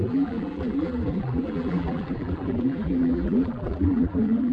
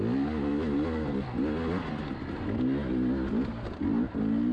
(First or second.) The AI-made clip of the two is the first